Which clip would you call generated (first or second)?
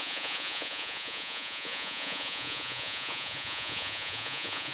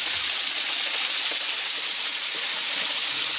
first